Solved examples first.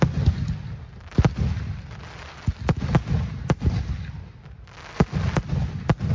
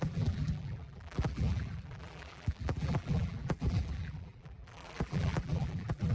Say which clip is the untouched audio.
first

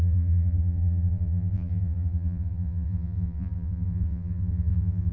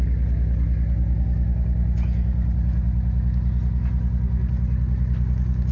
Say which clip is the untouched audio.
second